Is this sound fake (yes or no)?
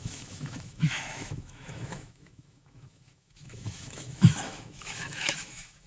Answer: yes